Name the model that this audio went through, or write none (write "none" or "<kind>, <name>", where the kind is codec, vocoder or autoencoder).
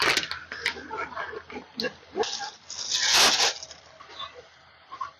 none